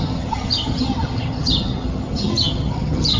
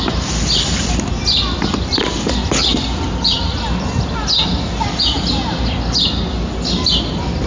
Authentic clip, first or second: second